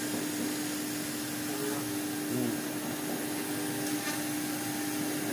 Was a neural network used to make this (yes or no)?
no